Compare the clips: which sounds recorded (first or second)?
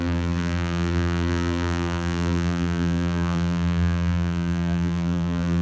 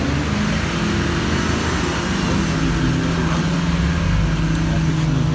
second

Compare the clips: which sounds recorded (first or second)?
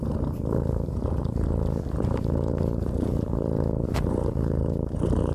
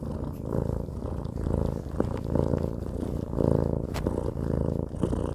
second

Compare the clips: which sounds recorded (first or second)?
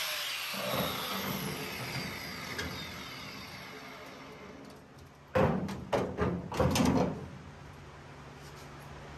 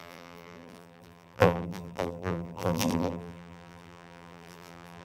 first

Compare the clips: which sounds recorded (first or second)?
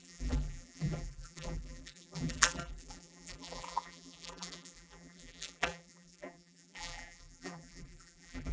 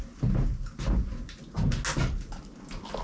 second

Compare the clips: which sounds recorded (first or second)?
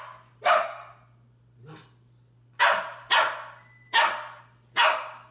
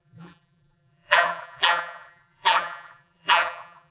first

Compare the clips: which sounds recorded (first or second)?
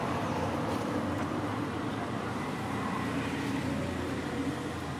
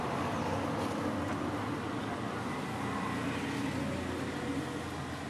second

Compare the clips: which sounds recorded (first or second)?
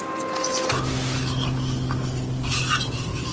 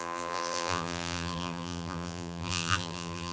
first